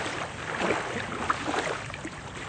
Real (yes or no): yes